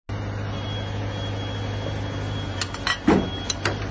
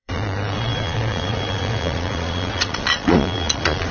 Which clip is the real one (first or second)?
first